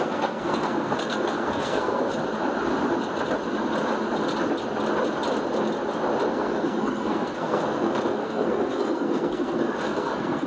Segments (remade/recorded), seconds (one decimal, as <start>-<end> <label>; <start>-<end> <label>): 0.0-2.1 remade; 2.1-6.3 recorded; 6.3-10.5 remade